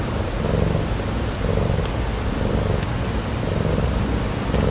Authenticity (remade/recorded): recorded